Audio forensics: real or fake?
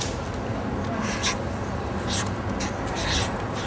real